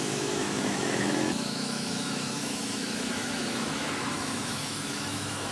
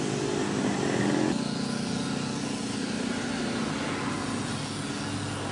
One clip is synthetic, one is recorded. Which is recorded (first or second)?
second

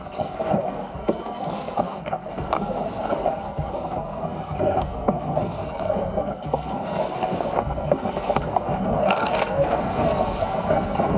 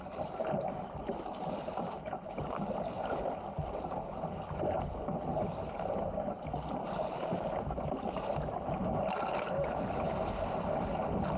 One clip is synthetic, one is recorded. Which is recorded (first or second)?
second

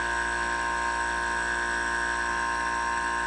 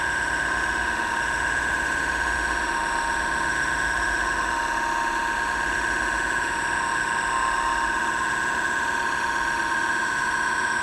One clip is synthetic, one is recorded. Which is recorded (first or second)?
first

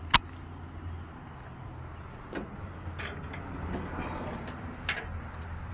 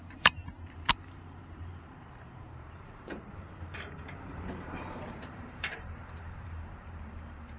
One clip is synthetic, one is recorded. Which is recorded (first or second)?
first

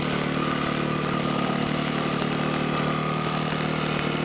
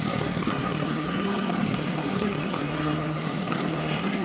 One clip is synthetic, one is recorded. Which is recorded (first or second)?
first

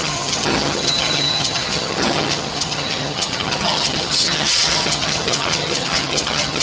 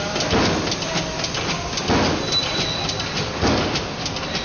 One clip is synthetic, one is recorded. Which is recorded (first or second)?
second